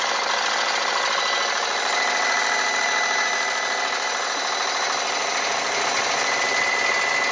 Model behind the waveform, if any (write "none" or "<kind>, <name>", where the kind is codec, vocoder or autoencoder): none